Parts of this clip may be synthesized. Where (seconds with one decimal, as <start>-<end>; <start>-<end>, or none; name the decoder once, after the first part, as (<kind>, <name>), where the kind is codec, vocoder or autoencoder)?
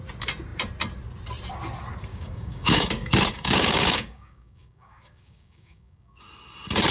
2.1-6.2 (codec, DAC)